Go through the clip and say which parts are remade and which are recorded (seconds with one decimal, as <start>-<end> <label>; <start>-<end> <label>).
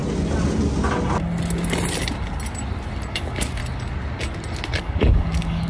0.0-3.1 recorded; 3.1-3.6 remade; 3.6-4.8 recorded; 4.8-5.7 remade